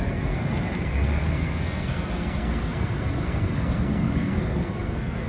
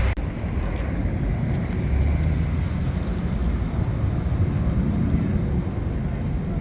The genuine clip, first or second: second